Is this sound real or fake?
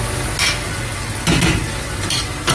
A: real